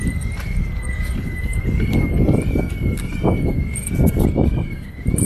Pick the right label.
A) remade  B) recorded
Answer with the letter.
B